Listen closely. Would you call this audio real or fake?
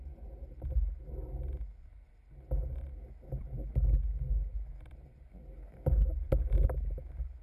real